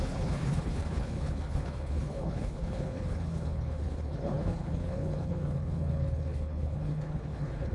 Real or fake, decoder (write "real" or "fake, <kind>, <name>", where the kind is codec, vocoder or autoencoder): fake, codec, HILCodec